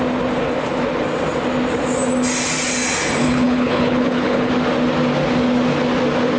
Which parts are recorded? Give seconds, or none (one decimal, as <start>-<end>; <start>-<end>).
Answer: 0.0-3.2; 4.5-6.4